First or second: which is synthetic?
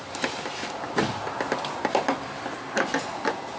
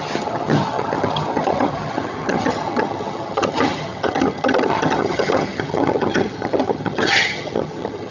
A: second